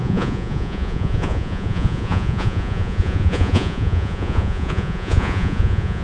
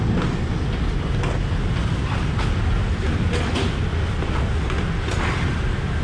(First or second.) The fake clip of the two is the first